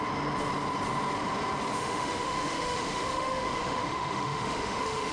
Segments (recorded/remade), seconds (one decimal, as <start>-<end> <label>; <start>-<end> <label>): 0.0-1.7 recorded; 1.7-5.1 remade